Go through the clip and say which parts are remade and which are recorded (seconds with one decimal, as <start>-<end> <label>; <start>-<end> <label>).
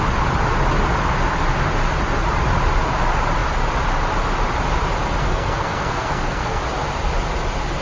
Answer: 0.0-5.2 recorded; 5.2-6.6 remade; 6.6-7.8 recorded